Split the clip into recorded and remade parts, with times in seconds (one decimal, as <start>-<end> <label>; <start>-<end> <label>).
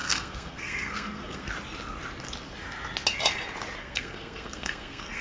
0.0-1.5 remade; 1.5-3.8 recorded; 3.8-5.2 remade